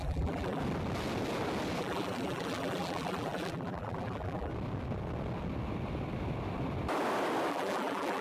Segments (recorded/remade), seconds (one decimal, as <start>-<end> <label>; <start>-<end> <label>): 0.0-0.6 remade; 0.6-1.8 recorded; 1.8-4.5 remade; 4.5-7.5 recorded; 7.5-8.2 remade